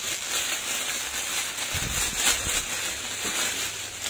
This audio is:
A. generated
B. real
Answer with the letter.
B